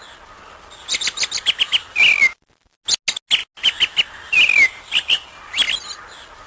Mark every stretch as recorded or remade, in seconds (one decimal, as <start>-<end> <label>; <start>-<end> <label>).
0.0-6.5 recorded